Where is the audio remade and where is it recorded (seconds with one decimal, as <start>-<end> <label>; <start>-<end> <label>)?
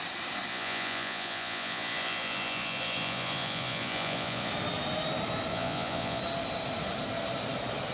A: 0.0-0.5 recorded; 0.5-4.5 remade; 4.5-5.5 recorded; 5.5-6.2 remade; 6.2-7.9 recorded